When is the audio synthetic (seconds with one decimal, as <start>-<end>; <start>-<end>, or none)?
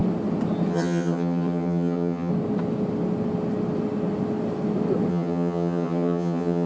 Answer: 0.7-2.3; 5.1-6.7